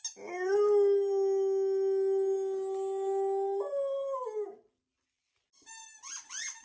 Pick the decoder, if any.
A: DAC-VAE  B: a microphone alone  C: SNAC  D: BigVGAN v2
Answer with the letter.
B